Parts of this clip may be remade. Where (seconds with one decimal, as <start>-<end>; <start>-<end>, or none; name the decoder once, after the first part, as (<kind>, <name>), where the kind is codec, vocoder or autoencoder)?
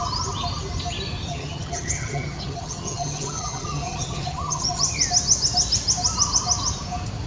1.3-5.0 (vocoder, HiFi-GAN)